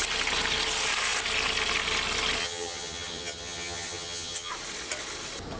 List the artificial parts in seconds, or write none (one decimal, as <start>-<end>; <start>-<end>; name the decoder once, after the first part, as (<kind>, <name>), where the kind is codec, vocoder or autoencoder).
2.4-4.5 (vocoder, HiFi-GAN)